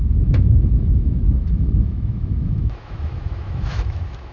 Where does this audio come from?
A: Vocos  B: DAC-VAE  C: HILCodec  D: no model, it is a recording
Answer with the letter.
B